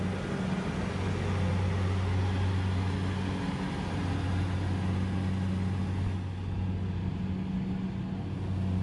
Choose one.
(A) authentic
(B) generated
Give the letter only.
A